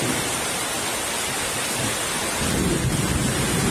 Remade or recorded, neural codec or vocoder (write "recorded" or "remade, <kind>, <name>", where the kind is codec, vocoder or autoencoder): recorded